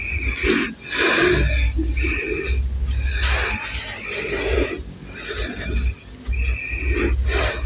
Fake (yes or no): no